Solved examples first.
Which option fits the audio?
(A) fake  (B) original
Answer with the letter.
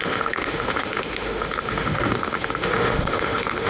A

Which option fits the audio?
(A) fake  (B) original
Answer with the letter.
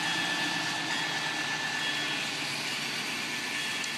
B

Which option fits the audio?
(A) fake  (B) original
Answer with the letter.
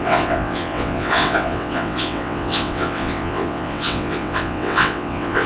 A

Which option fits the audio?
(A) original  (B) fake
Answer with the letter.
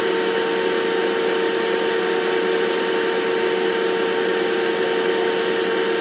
A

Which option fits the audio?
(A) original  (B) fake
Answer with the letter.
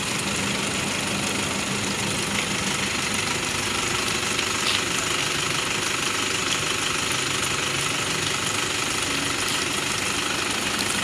A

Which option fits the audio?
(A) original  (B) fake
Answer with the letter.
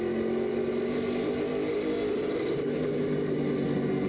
A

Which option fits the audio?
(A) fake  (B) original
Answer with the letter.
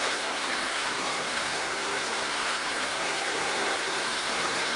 A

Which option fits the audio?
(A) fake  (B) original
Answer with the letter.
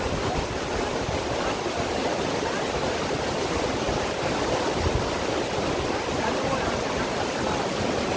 B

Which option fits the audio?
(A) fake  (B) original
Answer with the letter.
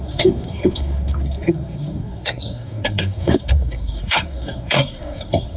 A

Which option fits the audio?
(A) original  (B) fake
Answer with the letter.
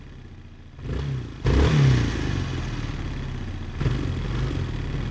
A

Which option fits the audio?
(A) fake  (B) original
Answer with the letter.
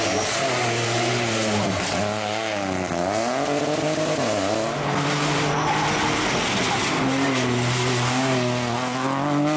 B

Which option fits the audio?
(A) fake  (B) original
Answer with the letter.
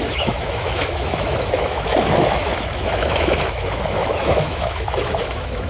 A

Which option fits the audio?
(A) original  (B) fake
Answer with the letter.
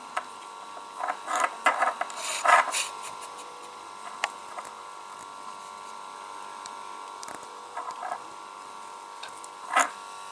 A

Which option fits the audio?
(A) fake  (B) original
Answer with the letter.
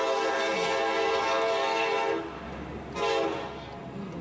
B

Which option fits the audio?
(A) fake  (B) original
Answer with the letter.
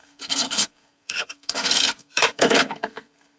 A